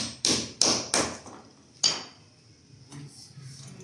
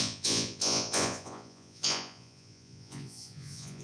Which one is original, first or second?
first